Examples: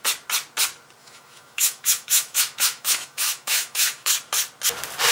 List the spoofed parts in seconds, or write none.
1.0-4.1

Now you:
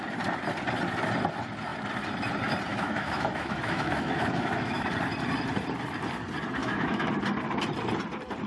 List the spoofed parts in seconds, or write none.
2.7-4.9; 6.6-7.1

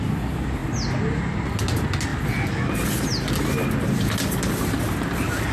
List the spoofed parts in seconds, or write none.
none

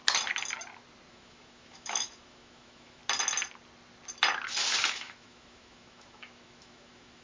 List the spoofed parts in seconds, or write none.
1.1-3.0; 4.9-7.2